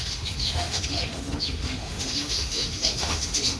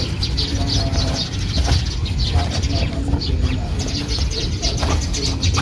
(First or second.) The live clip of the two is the second